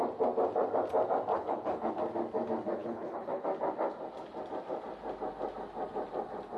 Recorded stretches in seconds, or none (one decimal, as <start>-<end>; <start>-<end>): 0.0-1.3; 1.9-2.8; 3.4-6.6